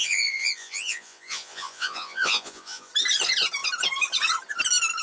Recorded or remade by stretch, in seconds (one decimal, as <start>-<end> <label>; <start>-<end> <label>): 0.0-2.9 remade; 2.9-5.0 recorded